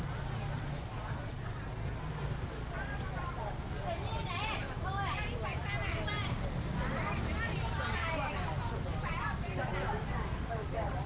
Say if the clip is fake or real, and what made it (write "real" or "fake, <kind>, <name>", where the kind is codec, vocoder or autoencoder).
real